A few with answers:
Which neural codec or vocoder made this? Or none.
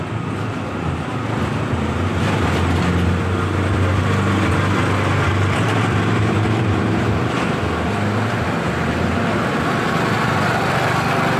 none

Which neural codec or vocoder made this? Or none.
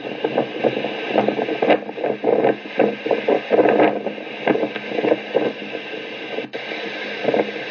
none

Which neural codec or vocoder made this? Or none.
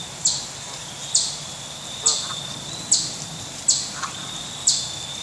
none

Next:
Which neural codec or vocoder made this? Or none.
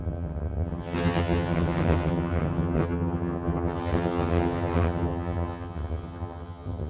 vocoder, HiFi-GAN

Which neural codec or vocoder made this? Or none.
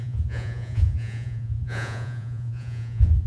vocoder, Vocos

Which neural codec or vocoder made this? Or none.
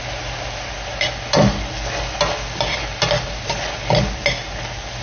none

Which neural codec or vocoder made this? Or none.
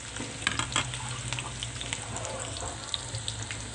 none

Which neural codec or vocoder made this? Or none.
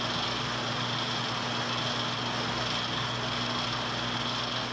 none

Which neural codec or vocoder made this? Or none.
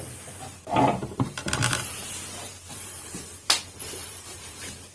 vocoder, BigVGAN v2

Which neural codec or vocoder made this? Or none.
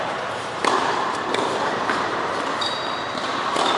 vocoder, BigVGAN v2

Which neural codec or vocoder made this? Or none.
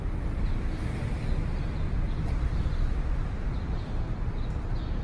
none